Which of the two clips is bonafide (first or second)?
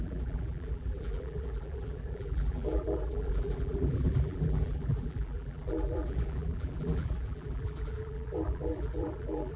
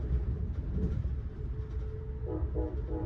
second